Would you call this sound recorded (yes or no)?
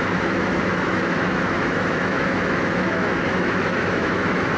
no